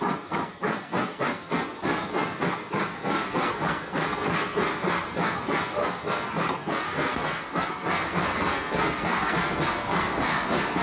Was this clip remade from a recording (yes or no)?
yes